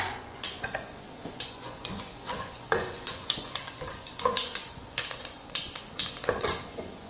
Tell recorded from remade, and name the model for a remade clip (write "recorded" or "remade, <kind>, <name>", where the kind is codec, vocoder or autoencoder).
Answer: remade, vocoder, Vocos